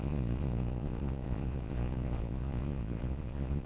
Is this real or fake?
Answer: fake